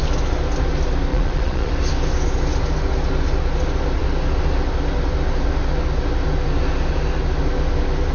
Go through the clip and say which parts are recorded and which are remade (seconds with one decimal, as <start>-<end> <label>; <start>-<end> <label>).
0.0-1.1 recorded; 1.1-1.7 remade; 1.7-8.1 recorded